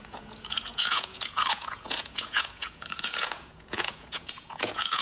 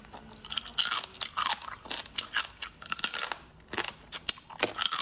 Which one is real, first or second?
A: second